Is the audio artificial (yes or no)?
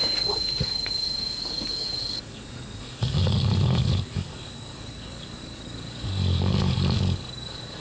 yes